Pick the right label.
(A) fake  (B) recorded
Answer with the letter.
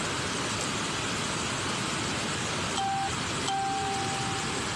B